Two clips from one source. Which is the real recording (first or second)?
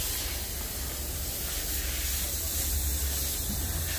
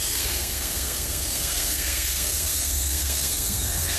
first